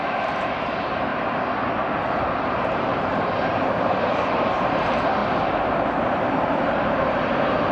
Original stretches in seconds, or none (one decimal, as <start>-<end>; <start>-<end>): 1.1-2.7